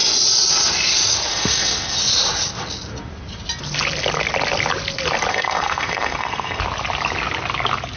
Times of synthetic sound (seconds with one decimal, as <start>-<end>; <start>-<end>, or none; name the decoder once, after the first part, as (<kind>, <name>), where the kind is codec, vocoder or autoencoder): 1.3-2.0 (codec, SNAC); 5.3-6.6